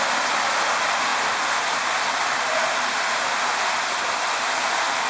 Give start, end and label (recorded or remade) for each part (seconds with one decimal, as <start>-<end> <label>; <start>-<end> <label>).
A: 0.0-5.1 recorded